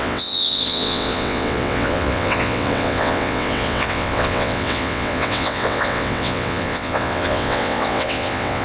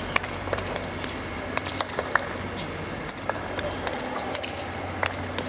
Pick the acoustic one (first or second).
second